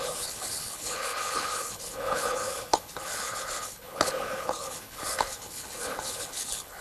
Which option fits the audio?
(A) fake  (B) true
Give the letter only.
A